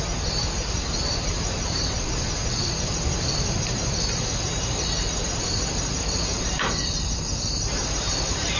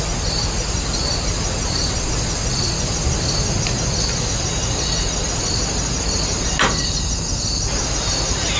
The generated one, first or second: first